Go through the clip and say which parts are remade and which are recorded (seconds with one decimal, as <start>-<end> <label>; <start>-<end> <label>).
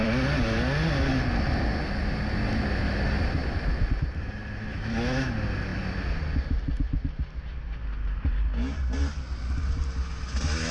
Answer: 0.0-4.7 recorded; 4.7-5.3 remade; 5.3-10.7 recorded